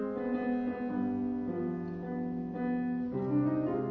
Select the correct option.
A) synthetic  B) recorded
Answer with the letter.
B